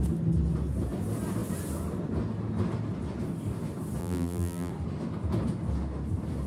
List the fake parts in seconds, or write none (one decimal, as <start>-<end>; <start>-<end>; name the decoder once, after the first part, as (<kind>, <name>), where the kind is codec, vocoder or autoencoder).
4.0-4.7 (vocoder, BigVGAN v2)